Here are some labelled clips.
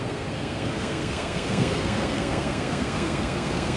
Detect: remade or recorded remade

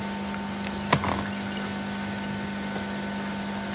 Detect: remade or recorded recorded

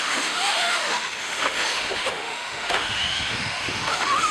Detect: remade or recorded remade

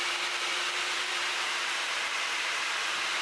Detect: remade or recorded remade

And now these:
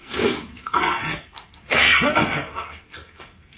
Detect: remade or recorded remade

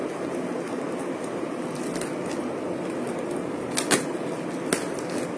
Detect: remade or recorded recorded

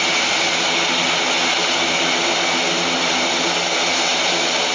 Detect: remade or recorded recorded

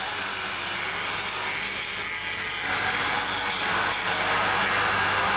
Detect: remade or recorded recorded